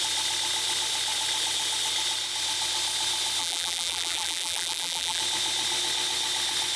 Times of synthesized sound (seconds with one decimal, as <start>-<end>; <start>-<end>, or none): 3.4-5.2